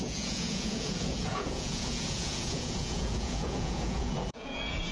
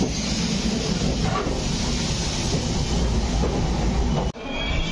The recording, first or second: second